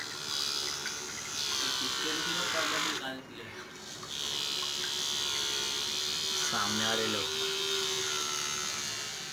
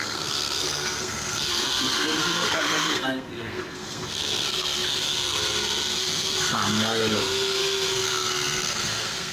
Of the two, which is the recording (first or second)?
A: first